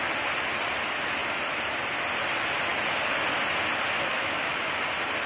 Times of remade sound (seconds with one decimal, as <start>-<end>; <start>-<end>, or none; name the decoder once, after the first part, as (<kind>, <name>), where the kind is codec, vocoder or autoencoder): 4.1-4.8 (autoencoder, DAC-VAE)